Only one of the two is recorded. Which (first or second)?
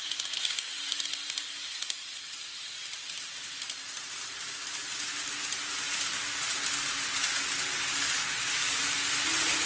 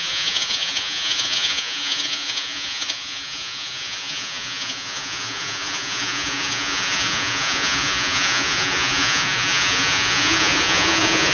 first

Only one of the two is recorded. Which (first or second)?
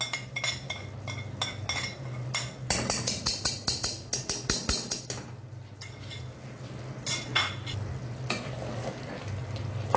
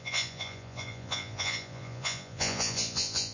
first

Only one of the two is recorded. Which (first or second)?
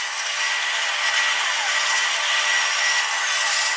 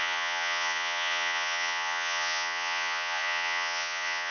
first